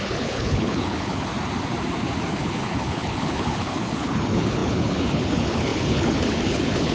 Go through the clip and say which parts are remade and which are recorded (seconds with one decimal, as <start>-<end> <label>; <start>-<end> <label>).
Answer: 0.0-1.3 remade; 1.3-2.3 recorded; 2.3-6.9 remade